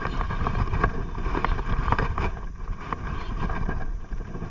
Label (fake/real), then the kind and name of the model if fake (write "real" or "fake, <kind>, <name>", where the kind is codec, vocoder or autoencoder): fake, vocoder, BigVGAN v2